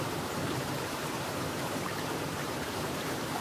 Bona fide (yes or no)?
no